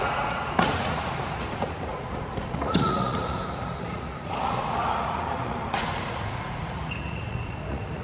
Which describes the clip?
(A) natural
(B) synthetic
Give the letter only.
B